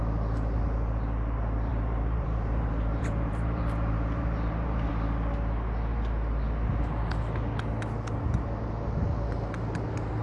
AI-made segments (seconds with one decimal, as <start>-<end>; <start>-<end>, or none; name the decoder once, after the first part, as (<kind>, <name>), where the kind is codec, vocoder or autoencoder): 1.7-4.9 (vocoder, BigVGAN v2)